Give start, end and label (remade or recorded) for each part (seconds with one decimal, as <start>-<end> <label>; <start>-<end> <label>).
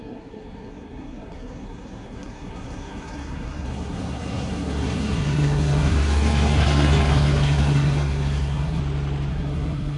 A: 0.0-8.8 remade; 8.8-9.3 recorded; 9.3-10.0 remade